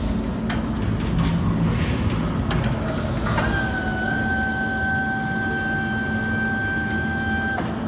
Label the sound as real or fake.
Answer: real